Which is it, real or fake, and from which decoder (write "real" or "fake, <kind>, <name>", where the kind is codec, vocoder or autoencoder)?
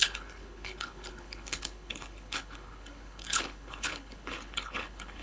fake, codec, HILCodec